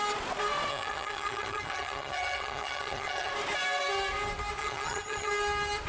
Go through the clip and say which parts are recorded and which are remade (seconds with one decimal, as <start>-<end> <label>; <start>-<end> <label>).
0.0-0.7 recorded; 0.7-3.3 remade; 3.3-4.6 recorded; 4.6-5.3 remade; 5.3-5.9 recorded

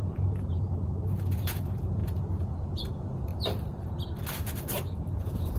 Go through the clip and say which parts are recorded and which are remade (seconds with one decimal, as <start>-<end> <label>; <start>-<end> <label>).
0.0-3.3 remade; 3.3-4.6 recorded; 4.6-5.6 remade

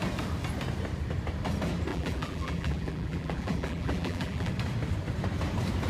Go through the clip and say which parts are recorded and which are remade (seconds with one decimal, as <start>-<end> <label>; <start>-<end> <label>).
0.0-1.9 recorded; 1.9-4.5 remade; 4.5-5.9 recorded

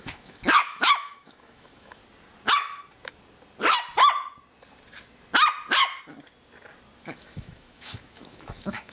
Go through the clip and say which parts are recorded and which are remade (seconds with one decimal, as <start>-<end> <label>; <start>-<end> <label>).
0.0-2.0 remade; 2.0-7.0 recorded; 7.0-8.9 remade

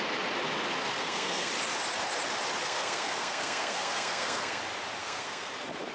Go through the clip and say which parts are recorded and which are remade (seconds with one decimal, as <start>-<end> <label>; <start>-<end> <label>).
0.0-1.0 recorded; 1.0-1.5 remade; 1.5-2.6 recorded; 2.6-4.6 remade; 4.6-5.0 recorded; 5.0-5.5 remade; 5.5-5.9 recorded